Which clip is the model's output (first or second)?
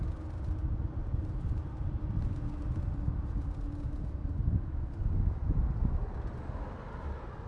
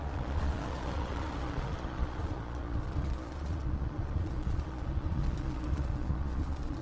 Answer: second